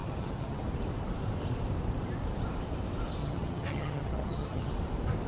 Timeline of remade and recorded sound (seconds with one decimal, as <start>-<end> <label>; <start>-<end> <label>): 0.0-0.6 remade; 0.6-3.2 recorded; 3.2-4.7 remade; 4.7-5.3 recorded